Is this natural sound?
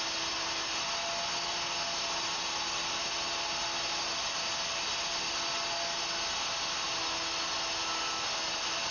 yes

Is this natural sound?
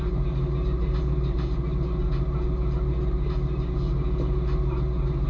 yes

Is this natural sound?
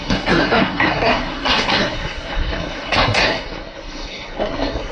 no